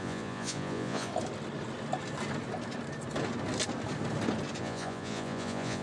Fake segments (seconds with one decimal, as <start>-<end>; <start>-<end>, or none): 0.0-1.1; 4.6-5.8